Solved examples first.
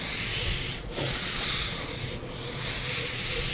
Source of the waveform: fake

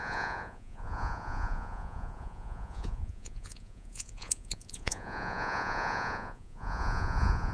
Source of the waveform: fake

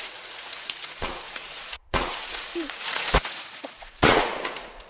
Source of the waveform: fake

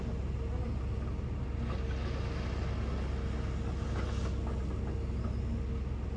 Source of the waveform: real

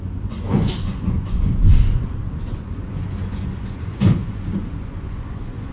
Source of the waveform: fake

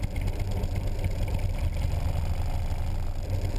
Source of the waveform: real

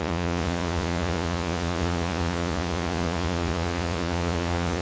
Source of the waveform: fake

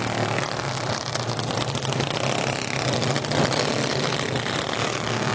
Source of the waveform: real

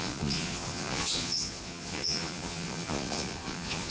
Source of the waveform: fake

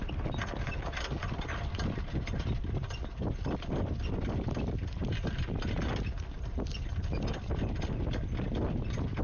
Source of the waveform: real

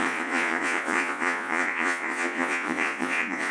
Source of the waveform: fake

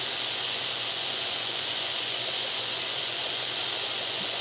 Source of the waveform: fake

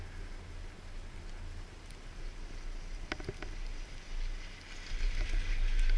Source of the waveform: real